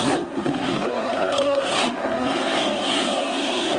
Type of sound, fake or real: fake